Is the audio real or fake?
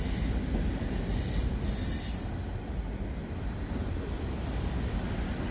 real